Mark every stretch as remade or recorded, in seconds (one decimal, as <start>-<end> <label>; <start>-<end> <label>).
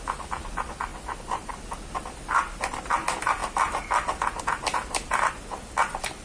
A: 0.0-0.9 recorded; 0.9-1.5 remade; 1.5-6.2 recorded